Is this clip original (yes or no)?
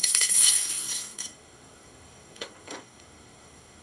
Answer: no